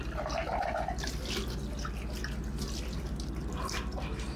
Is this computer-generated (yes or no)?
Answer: no